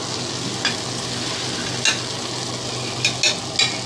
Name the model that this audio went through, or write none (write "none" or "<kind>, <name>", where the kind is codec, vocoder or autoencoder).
none